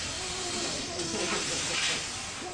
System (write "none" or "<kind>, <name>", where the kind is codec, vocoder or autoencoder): none